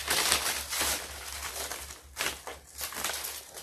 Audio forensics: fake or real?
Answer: real